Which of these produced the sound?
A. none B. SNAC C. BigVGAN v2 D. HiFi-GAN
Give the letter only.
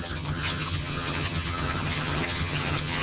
D